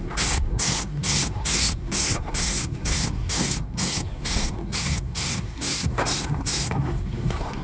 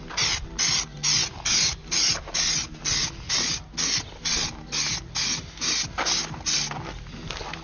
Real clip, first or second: second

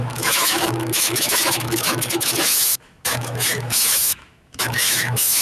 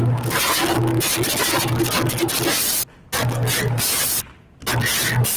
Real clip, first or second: second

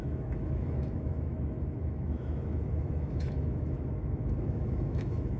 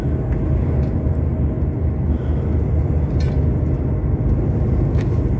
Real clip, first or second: second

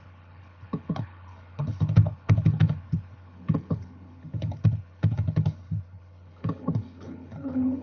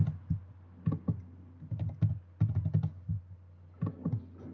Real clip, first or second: second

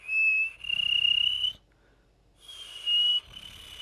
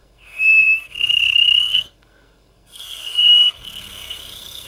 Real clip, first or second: first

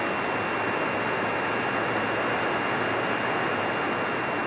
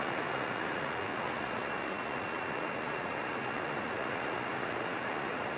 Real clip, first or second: first